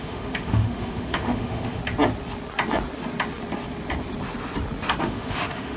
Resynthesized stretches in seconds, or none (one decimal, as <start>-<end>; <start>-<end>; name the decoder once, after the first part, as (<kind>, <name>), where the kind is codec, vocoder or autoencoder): 0.0-1.8 (autoencoder, DAC-VAE); 5.0-5.8